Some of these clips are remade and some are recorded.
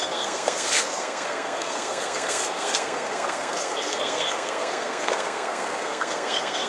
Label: remade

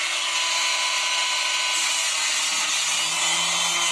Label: recorded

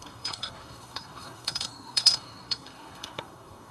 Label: remade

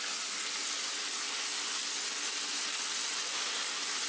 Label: recorded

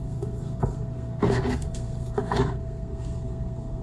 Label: remade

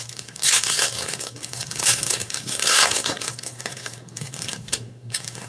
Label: remade